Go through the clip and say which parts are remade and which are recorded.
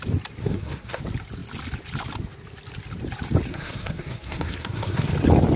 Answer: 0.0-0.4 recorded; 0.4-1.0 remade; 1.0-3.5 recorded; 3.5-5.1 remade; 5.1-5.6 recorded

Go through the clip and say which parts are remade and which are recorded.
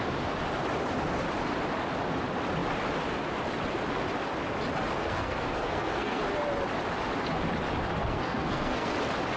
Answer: 0.0-5.0 recorded; 5.0-6.2 remade; 6.2-7.9 recorded; 7.9-8.9 remade; 8.9-9.4 recorded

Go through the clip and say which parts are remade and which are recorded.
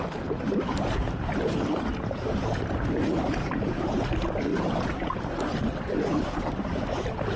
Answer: 0.0-7.4 recorded